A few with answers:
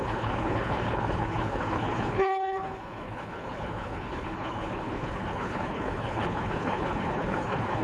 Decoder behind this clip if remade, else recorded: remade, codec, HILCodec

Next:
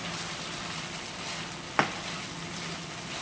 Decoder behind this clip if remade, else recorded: recorded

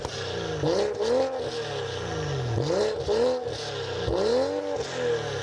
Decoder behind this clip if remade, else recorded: recorded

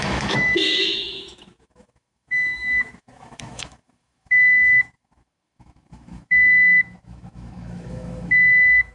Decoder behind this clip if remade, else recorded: remade, autoencoder, DAC-VAE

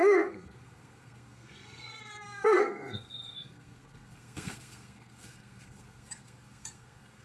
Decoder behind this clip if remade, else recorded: remade, codec, SNAC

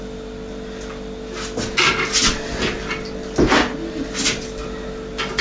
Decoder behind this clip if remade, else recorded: recorded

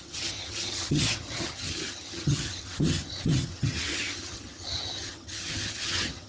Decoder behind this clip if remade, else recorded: remade, vocoder, HiFi-GAN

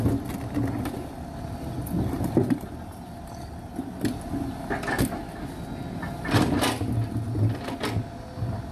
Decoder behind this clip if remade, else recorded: recorded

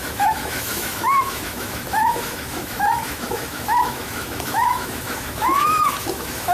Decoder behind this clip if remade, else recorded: remade, autoencoder, DAC-VAE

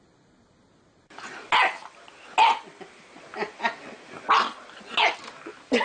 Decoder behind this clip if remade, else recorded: recorded